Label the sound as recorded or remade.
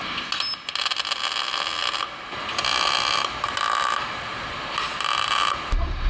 recorded